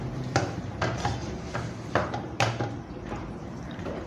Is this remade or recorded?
remade